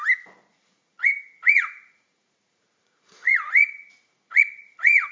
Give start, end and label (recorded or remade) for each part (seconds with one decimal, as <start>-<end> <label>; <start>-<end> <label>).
0.0-0.5 recorded; 0.5-5.1 remade